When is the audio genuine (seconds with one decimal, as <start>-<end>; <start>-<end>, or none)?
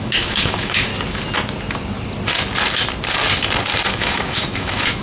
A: 0.9-3.9